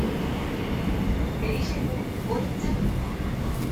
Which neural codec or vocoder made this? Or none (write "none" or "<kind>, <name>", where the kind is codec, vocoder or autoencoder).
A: none